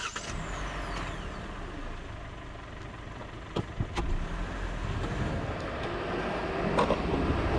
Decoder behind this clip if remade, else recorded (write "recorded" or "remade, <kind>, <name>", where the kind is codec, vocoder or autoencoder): recorded